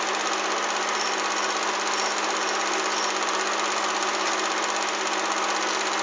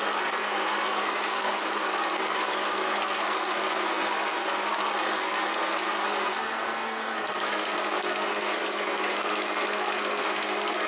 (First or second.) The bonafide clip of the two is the first